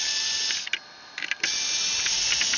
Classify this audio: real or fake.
real